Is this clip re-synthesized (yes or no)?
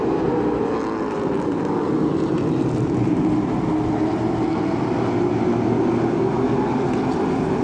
no